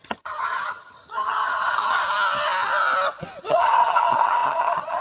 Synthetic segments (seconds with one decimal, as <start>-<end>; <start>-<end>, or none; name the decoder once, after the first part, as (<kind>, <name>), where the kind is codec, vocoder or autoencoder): 0.0-2.0 (vocoder, HiFi-GAN); 3.4-5.0